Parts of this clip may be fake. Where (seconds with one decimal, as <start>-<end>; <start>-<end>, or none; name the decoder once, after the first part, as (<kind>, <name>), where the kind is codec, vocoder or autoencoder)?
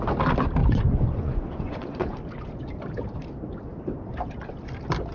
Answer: 0.6-2.1 (vocoder, Vocos)